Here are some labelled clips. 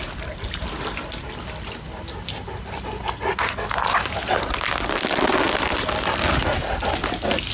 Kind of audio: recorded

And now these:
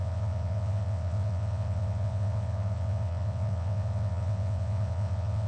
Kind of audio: remade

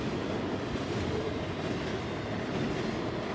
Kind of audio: recorded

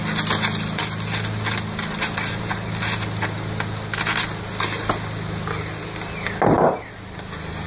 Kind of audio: recorded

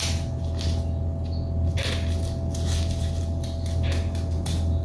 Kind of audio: recorded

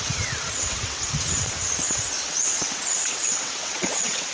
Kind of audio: remade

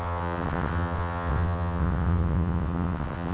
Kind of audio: remade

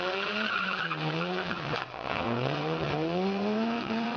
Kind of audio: remade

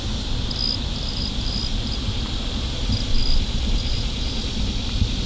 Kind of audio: recorded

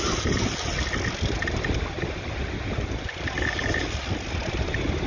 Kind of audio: recorded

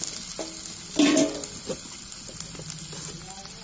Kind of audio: recorded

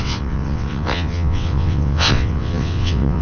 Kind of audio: remade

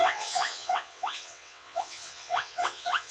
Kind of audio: remade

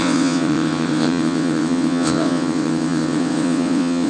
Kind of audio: remade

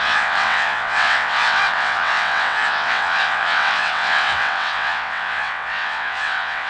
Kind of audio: remade